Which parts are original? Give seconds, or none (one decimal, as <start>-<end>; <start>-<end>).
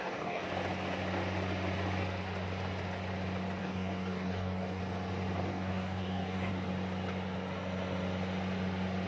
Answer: 0.4-3.6; 4.8-5.5; 6.5-9.1